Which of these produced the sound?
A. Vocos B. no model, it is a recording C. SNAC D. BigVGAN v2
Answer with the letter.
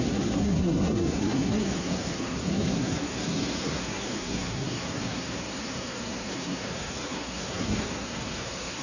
C